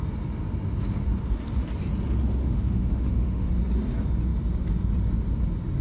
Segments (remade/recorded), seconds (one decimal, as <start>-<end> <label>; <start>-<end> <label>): 0.0-2.4 recorded; 2.4-3.5 remade; 3.5-5.8 recorded